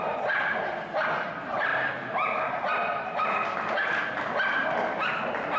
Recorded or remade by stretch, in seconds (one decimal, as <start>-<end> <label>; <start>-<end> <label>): 0.0-5.6 recorded